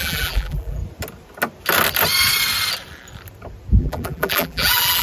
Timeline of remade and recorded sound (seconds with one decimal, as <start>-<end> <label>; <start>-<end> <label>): 0.0-0.8 remade; 0.8-3.8 recorded; 3.8-5.0 remade